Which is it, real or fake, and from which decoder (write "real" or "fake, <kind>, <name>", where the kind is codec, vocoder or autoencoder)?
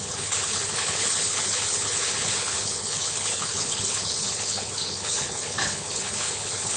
fake, codec, HILCodec